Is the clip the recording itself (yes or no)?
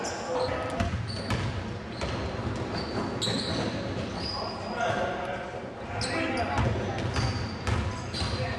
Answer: yes